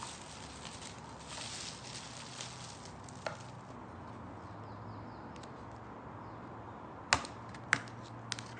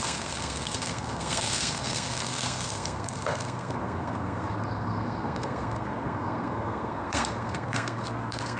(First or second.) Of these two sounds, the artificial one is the second